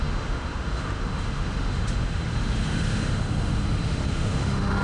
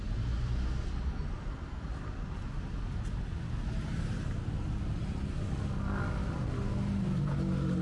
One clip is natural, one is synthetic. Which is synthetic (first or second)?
first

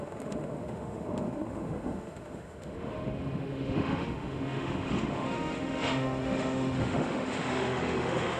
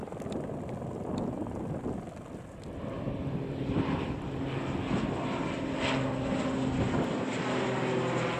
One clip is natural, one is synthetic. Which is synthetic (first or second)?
first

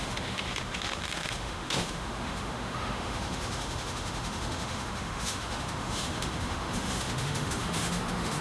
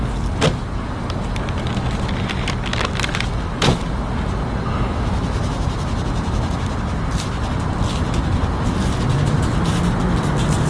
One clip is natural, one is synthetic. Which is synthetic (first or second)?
first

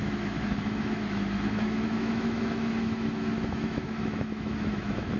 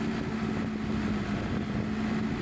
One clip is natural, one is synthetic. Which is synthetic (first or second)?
first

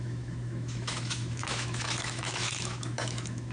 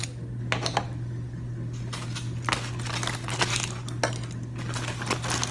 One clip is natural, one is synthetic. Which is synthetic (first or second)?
first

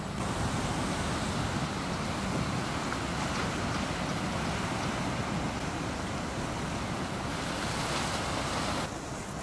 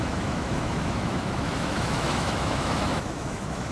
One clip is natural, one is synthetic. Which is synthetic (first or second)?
second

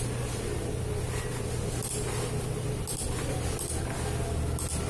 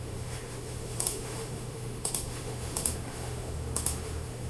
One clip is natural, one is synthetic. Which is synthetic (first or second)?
second